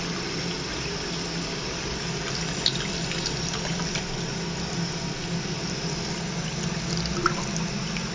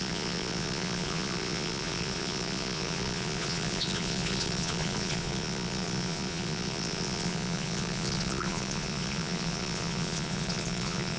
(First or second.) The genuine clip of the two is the first